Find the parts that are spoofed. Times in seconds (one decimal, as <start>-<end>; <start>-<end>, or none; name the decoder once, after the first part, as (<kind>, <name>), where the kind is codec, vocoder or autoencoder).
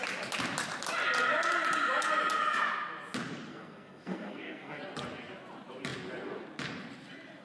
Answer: 3.5-4.8 (codec, SNAC)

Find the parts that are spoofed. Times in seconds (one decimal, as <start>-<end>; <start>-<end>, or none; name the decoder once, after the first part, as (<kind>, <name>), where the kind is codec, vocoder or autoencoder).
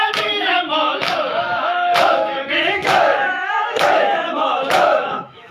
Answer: 0.0-5.5 (autoencoder, DAC-VAE)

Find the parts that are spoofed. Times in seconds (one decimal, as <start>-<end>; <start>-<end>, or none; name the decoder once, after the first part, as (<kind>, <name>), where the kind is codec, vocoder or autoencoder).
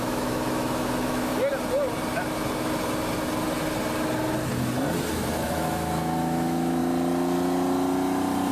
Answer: 0.0-1.3 (autoencoder, DAC-VAE); 5.1-6.8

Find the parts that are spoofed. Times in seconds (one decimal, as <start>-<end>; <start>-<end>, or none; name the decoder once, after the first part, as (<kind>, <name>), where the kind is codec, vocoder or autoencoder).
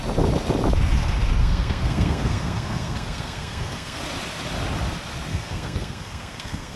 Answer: 1.4-4.0 (codec, SNAC); 5.3-6.8